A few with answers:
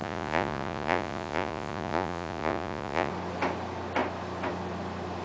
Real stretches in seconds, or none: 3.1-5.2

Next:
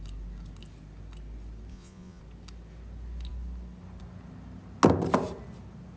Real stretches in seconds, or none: 0.0-1.7; 2.2-6.0

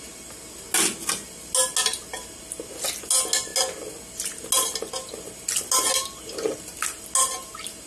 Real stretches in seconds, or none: 0.0-7.9

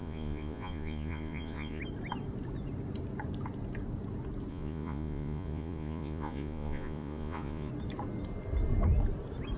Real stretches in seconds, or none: 1.8-4.5; 7.7-9.6

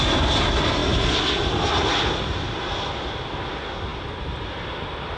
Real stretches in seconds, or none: 0.0-5.2

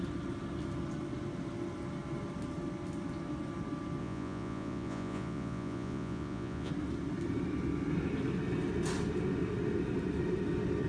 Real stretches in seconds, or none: 0.0-4.0; 6.7-10.9